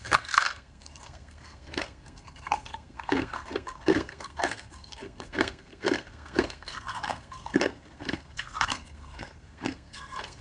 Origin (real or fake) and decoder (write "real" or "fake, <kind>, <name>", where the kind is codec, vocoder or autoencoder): fake, codec, SNAC